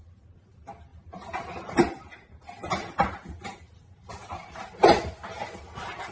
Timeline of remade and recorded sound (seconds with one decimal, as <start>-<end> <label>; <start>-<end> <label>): 0.0-0.9 recorded; 0.9-1.8 remade; 1.8-6.1 recorded

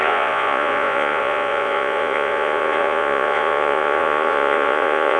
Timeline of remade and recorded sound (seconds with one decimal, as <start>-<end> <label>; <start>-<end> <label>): 0.0-5.2 remade

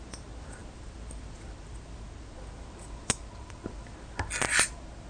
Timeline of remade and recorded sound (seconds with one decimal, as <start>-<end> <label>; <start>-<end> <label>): 0.0-5.1 recorded

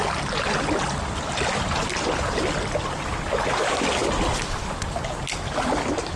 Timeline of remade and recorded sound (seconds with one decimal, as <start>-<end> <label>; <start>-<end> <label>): 0.0-6.2 recorded

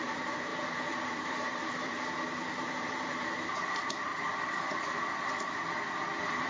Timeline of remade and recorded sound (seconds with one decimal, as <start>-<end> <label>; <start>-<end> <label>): 0.0-4.1 remade; 4.1-6.5 recorded

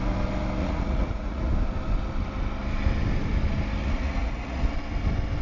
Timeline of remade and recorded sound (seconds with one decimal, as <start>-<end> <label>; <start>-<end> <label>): 0.0-0.6 recorded; 0.6-1.5 remade; 1.5-3.8 recorded; 3.8-4.6 remade; 4.6-5.4 recorded